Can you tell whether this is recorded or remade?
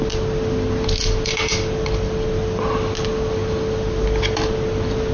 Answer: recorded